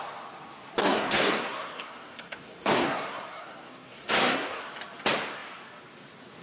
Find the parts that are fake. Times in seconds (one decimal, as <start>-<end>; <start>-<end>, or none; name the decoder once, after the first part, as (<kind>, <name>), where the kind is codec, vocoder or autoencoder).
0.8-4.6 (codec, SNAC)